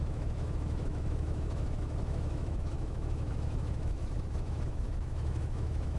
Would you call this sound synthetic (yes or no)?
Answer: yes